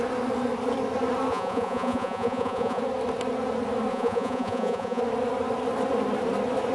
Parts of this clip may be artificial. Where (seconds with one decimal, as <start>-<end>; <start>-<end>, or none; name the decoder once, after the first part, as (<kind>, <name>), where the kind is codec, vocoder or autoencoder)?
1.3-2.8 (vocoder, Vocos); 3.9-5.0